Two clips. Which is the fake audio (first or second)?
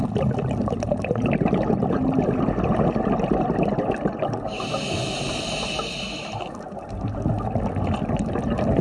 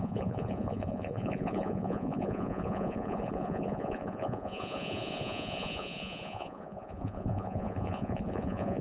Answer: second